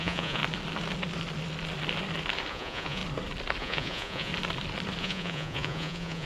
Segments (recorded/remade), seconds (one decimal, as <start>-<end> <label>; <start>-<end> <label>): 0.0-0.4 remade; 0.4-2.5 recorded; 2.5-3.0 remade; 3.0-3.6 recorded; 3.6-4.3 remade; 4.3-5.0 recorded; 5.0-6.3 remade